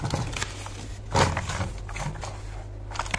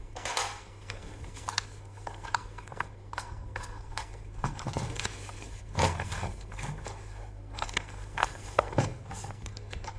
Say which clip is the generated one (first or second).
second